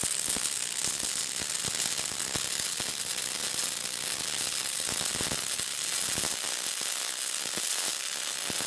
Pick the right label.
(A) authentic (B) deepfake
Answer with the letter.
A